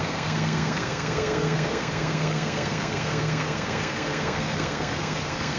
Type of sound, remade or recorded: remade